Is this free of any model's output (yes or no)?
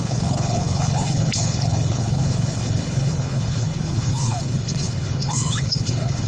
no